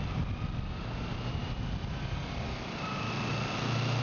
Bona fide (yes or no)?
yes